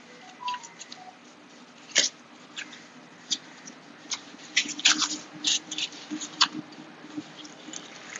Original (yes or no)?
yes